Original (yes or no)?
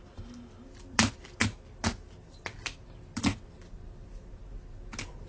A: yes